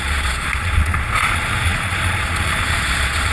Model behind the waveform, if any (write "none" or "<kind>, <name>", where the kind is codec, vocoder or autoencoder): vocoder, Vocos